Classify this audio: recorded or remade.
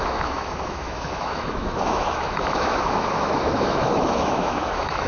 remade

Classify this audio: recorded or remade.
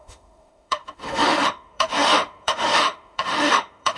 remade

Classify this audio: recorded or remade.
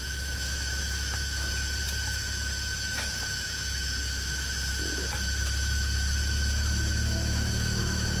remade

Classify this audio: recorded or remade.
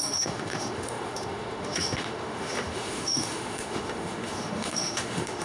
remade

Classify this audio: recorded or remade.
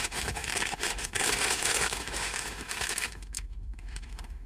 remade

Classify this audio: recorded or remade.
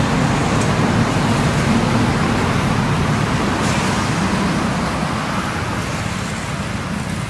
recorded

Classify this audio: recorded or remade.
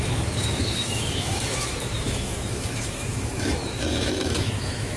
remade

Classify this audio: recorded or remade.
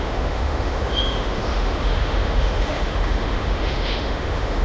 remade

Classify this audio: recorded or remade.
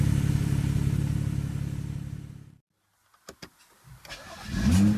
recorded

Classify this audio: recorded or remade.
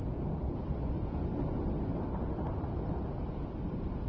recorded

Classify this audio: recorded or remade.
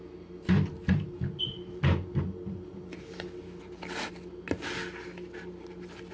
recorded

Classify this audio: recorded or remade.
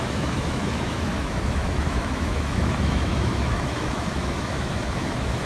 remade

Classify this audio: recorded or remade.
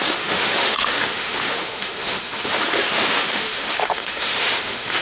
remade